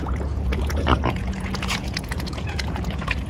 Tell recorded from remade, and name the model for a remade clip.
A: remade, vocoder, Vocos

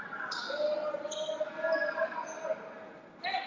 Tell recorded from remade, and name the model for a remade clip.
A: recorded